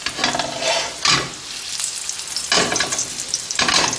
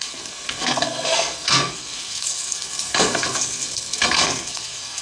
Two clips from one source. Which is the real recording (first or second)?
first